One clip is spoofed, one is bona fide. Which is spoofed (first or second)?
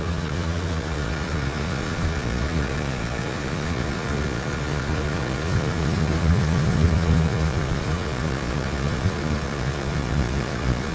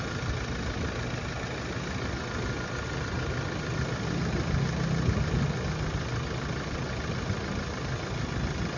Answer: first